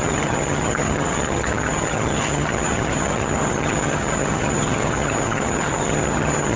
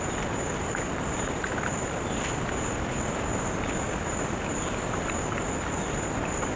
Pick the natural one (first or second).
second